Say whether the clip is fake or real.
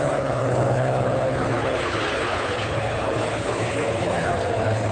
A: fake